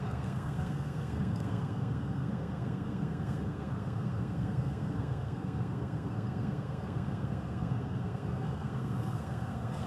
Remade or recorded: remade